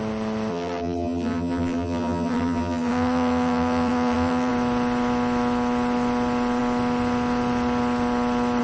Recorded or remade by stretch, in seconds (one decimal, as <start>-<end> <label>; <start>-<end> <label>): 0.0-0.5 recorded; 0.5-4.5 remade; 4.5-8.6 recorded